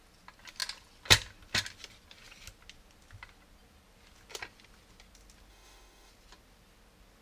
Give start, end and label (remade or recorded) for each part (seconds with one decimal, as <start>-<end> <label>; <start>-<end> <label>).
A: 0.0-5.5 recorded; 5.5-6.1 remade; 6.1-7.2 recorded

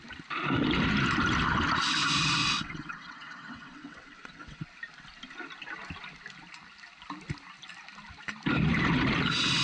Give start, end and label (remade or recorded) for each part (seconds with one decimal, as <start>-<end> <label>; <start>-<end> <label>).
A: 0.0-2.4 recorded; 2.4-4.6 remade; 4.6-9.6 recorded

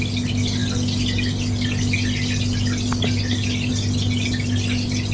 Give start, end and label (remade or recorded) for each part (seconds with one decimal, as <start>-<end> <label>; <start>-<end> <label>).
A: 0.0-5.1 recorded

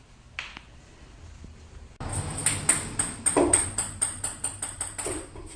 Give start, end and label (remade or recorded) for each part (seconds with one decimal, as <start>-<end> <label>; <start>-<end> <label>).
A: 0.0-5.6 remade